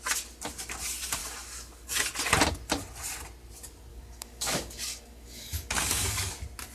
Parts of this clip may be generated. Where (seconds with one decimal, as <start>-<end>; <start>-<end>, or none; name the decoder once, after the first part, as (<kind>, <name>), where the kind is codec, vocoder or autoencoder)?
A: 1.2-2.1 (codec, DAC); 3.9-6.3